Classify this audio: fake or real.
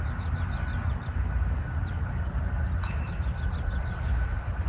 real